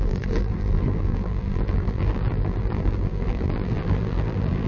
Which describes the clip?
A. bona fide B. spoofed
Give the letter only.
B